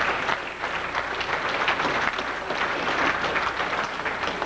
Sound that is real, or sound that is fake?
real